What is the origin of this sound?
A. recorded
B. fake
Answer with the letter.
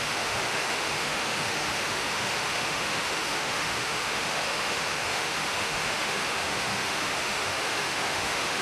B